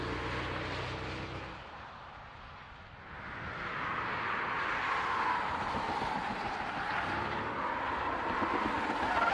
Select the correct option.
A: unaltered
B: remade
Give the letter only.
A